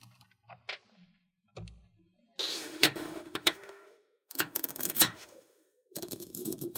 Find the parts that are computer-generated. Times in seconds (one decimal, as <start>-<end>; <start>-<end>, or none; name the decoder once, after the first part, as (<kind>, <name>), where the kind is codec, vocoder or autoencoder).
2.5-6.8 (autoencoder, DAC-VAE)